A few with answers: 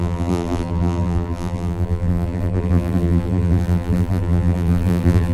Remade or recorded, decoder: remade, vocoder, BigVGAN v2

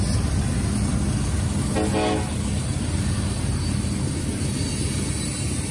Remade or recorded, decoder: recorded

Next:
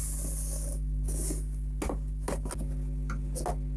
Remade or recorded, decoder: recorded